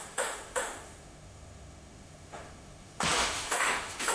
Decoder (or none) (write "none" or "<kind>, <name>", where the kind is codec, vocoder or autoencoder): autoencoder, DAC-VAE